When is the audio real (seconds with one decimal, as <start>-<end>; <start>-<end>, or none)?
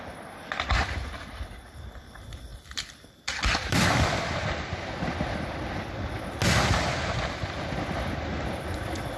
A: 0.0-9.2